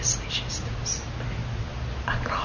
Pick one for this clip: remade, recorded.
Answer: recorded